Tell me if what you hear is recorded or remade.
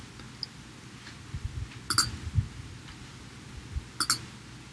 recorded